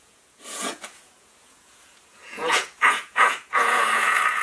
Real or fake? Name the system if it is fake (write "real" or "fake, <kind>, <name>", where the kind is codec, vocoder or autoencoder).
fake, vocoder, Vocos